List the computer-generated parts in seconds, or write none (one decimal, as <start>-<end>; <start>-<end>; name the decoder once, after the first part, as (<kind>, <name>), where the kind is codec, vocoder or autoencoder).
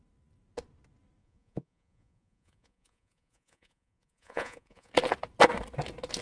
1.2-4.9 (vocoder, Vocos)